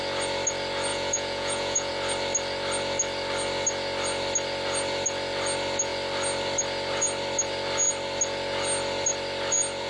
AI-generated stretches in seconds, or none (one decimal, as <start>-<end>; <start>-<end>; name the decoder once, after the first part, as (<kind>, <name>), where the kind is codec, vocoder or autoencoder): 0.9-1.9 (vocoder, Vocos)

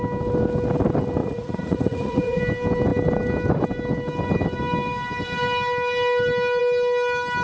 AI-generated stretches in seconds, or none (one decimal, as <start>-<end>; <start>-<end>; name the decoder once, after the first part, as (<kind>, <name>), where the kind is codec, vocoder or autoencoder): 1.2-2.4 (vocoder, Vocos)